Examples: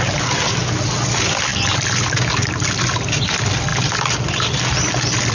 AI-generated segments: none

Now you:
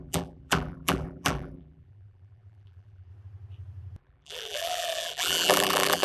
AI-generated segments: 0.0-3.1 (vocoder, BigVGAN v2); 4.0-6.0

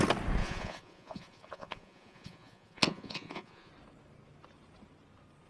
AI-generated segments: 0.4-3.7 (vocoder, Vocos)

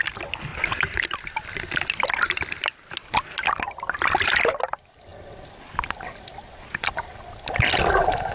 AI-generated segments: none

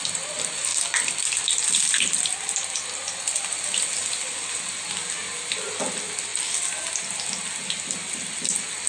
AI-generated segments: none